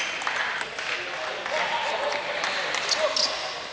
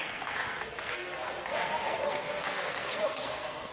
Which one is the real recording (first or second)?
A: first